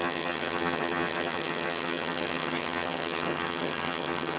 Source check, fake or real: fake